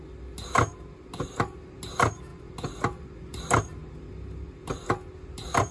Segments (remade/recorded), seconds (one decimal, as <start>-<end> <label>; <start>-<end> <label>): 0.0-5.7 recorded